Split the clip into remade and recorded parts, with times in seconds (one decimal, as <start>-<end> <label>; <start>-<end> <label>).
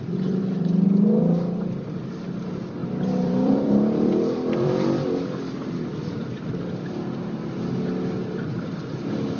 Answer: 0.0-2.8 recorded; 2.8-6.5 remade; 6.5-9.4 recorded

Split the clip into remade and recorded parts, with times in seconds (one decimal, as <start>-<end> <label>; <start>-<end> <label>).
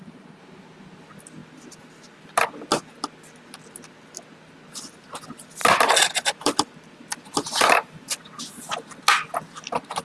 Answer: 0.0-5.6 recorded; 5.6-8.4 remade; 8.4-10.0 recorded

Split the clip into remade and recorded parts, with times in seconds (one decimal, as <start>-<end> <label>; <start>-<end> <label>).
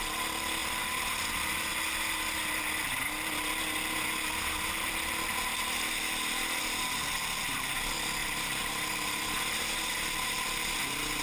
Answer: 0.0-0.6 recorded; 0.6-1.2 remade; 1.2-8.2 recorded; 8.2-9.5 remade; 9.5-11.2 recorded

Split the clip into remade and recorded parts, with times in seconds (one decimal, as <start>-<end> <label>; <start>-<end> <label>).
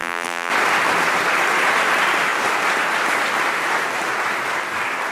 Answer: 0.0-0.5 remade; 0.5-5.1 recorded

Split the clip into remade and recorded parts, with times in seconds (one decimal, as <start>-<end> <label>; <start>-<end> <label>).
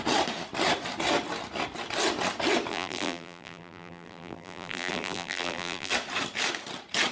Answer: 0.0-2.7 recorded; 2.7-5.9 remade; 5.9-7.1 recorded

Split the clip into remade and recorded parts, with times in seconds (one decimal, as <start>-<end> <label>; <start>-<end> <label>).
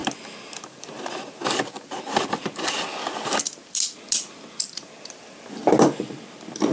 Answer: 0.0-6.7 recorded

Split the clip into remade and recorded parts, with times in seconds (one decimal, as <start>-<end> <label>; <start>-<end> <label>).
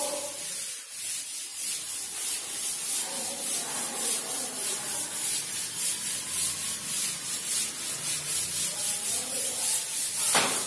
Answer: 0.0-1.5 recorded; 1.5-5.6 remade; 5.6-10.7 recorded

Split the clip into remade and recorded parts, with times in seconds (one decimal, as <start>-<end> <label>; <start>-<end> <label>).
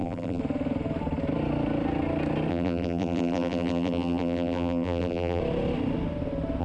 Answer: 0.0-0.4 remade; 0.4-2.5 recorded; 2.5-5.4 remade; 5.4-6.6 recorded